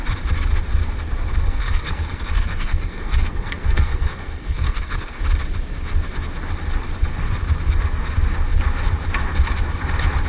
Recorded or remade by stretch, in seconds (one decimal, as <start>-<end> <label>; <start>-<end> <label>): 0.0-1.4 recorded; 1.4-5.2 remade; 5.2-10.3 recorded